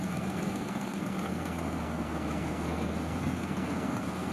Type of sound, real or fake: fake